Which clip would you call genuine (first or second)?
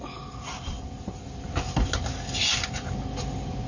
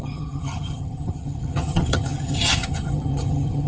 first